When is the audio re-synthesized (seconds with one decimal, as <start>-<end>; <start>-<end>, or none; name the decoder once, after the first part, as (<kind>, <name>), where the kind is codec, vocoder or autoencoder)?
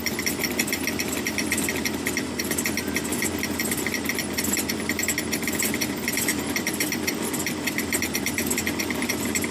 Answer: none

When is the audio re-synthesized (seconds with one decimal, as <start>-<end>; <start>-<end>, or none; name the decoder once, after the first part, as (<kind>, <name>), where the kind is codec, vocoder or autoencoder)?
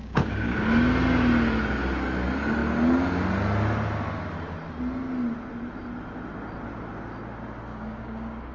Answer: 0.0-0.6 (codec, DAC); 7.7-8.5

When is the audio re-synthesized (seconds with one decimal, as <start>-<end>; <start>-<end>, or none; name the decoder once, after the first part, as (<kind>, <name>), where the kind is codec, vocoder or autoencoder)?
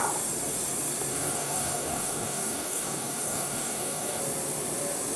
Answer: 1.1-4.2 (codec, DAC)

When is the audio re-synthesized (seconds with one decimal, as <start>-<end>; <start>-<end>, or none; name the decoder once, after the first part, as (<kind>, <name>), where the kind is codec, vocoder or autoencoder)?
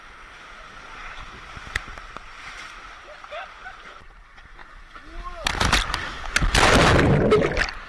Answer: none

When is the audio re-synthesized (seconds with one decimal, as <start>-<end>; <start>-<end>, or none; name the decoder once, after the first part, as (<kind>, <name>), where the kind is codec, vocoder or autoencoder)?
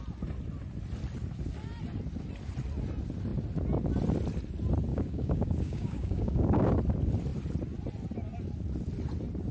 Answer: 4.9-6.7 (codec, DAC)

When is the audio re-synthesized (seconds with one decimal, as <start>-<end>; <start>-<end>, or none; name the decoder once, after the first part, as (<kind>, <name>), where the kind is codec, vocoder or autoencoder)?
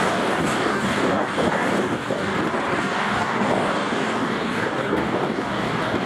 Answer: 0.0-2.3 (codec, DAC); 2.8-6.1